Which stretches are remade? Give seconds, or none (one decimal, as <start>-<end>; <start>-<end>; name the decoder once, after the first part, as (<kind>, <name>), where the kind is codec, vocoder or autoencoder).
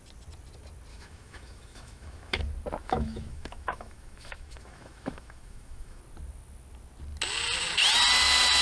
0.9-2.4 (autoencoder, DAC-VAE); 2.8-6.0